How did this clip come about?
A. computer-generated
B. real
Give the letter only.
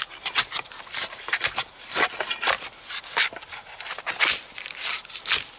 B